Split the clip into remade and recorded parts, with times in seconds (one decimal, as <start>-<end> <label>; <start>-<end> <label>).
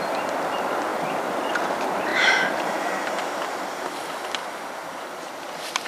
0.0-2.1 recorded; 2.1-3.4 remade; 3.4-4.4 recorded; 4.4-5.4 remade; 5.4-5.9 recorded